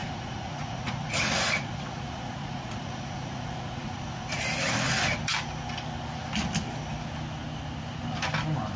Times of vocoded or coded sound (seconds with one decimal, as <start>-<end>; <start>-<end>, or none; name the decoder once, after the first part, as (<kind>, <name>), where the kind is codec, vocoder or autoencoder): 0.0-4.4 (vocoder, Vocos)